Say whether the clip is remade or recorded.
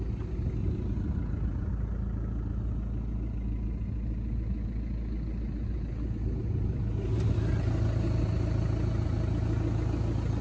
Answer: recorded